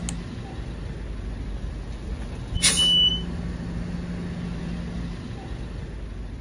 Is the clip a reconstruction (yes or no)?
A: no